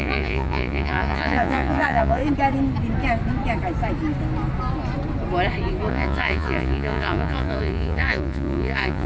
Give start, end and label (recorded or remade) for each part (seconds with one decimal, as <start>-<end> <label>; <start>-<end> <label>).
0.0-2.2 remade; 2.2-5.9 recorded; 5.9-9.1 remade